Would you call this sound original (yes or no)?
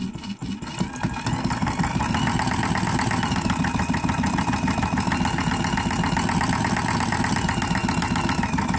yes